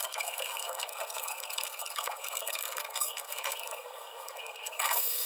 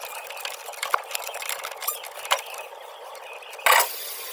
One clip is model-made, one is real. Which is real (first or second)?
second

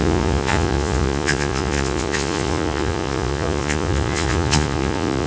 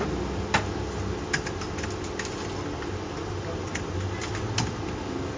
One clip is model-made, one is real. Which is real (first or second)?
second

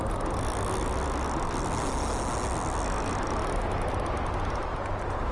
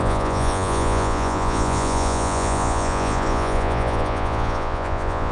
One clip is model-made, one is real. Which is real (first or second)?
first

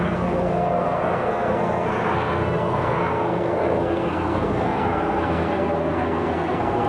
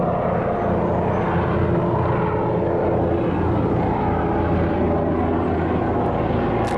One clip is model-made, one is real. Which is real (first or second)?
second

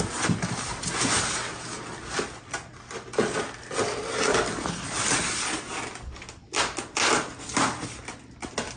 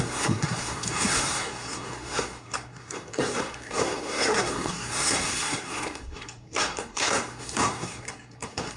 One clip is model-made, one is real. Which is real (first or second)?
first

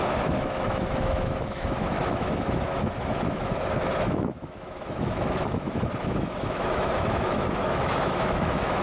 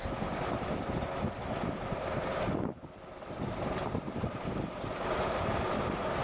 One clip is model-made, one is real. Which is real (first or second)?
second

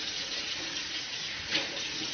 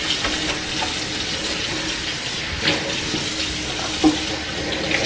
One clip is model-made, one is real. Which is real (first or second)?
second